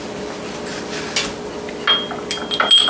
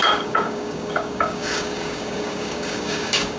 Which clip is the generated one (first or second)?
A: second